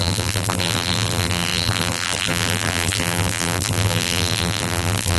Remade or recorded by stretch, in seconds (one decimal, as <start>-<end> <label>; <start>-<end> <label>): 0.0-5.2 remade